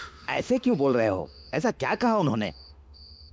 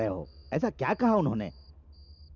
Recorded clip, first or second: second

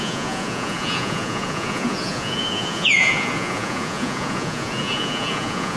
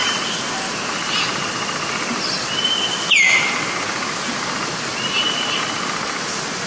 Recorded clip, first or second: second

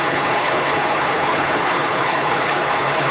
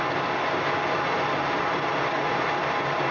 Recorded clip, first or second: second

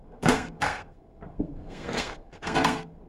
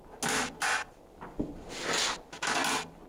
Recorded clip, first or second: second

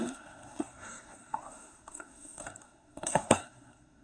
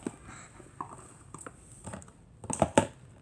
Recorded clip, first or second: second